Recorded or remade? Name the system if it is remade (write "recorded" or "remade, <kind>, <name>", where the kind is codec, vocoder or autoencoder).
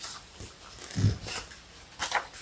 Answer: recorded